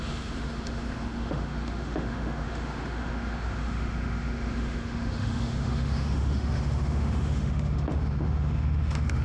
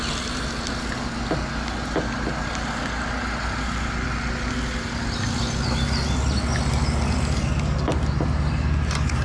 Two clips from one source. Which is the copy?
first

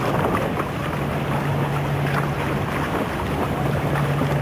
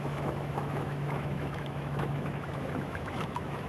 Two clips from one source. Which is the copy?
second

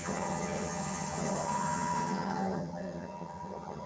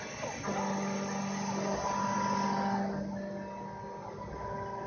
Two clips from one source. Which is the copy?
first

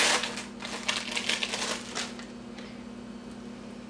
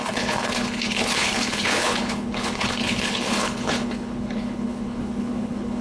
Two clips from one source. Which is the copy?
second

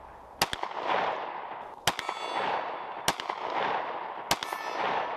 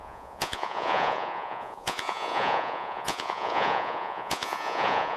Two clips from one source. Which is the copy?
second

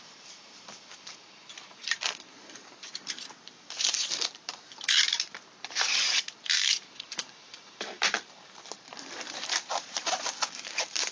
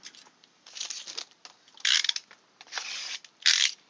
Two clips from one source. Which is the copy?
first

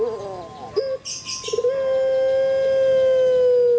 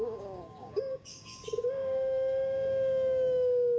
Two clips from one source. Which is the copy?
second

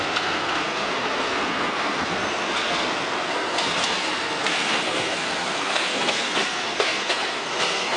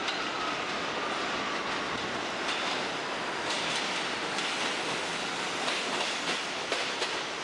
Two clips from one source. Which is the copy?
first